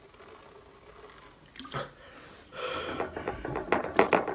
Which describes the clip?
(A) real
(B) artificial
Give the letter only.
A